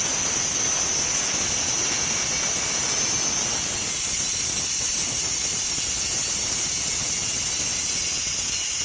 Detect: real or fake real